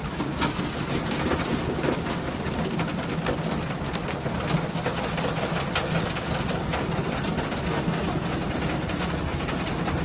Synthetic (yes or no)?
no